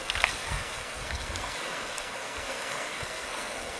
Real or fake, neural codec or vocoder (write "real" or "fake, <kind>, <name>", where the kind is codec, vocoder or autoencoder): fake, codec, SNAC